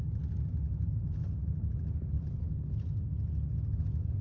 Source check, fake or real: real